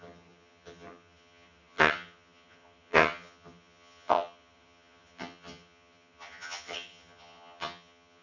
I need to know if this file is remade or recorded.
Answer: remade